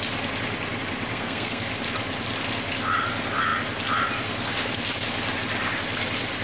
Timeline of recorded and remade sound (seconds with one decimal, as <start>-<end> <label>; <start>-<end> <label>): 0.0-1.1 recorded; 1.1-1.7 remade; 1.7-6.4 recorded